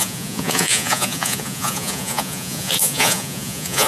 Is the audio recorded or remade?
remade